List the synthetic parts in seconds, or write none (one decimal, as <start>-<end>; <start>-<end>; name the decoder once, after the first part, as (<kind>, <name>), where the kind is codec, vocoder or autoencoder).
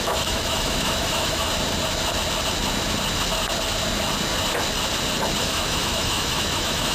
0.0-1.5 (autoencoder, DAC-VAE); 5.4-6.9